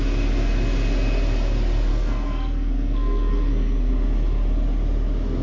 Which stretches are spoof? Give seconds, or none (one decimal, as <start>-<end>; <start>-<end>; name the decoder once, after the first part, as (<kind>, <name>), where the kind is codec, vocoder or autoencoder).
1.9-3.9 (codec, SNAC)